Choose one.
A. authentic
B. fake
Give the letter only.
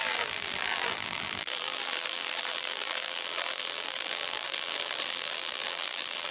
B